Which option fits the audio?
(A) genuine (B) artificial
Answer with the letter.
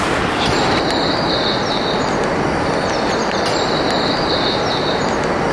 A